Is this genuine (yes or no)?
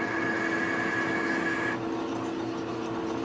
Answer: yes